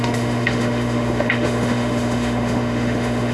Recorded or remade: remade